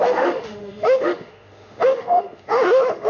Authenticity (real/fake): fake